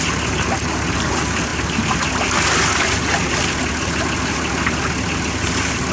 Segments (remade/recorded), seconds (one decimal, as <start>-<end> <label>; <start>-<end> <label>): 0.0-5.9 recorded

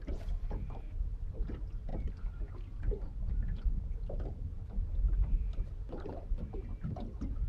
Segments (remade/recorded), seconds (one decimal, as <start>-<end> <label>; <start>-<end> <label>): 0.0-7.5 remade

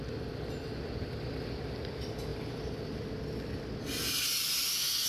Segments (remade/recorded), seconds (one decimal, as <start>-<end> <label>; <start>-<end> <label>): 0.0-2.3 recorded; 2.3-3.1 remade; 3.1-5.1 recorded

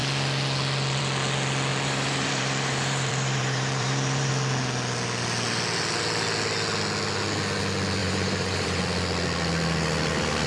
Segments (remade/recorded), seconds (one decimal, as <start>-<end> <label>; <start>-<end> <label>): 0.0-1.7 recorded; 1.7-4.3 remade; 4.3-8.0 recorded; 8.0-8.8 remade; 8.8-10.5 recorded

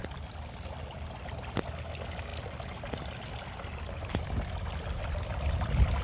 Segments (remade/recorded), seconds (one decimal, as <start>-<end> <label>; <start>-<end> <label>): 0.0-6.0 recorded